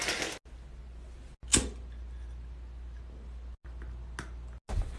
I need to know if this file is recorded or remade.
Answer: recorded